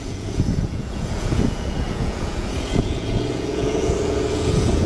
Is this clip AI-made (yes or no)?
yes